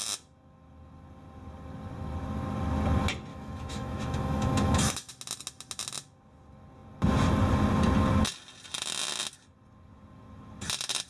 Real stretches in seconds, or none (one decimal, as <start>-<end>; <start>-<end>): 0.0-3.3; 5.1-11.1